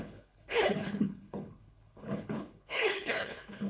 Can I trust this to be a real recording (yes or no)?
no